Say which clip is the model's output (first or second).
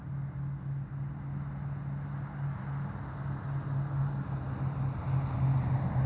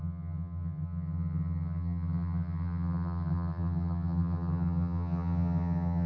second